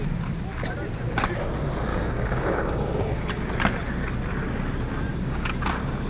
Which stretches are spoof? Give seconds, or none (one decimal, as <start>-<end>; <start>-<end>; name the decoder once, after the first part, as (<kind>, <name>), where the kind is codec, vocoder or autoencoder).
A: 1.9-3.5 (codec, DAC); 5.1-5.6